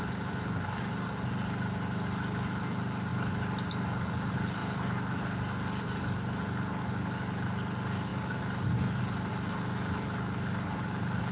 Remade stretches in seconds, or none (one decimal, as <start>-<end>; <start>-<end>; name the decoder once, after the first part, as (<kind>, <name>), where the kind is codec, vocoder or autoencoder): none